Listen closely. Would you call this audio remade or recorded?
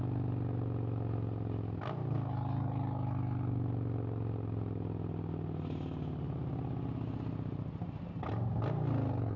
recorded